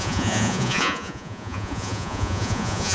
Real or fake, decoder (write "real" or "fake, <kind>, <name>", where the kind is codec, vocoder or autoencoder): fake, vocoder, Vocos